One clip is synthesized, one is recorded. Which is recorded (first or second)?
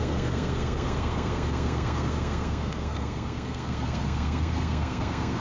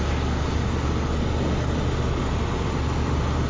second